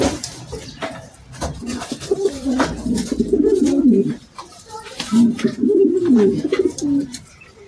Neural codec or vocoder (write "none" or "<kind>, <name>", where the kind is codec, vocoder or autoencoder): vocoder, BigVGAN v2